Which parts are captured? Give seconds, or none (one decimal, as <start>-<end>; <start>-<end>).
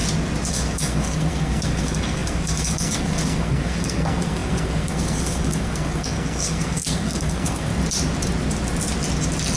0.0-0.5; 7.7-9.6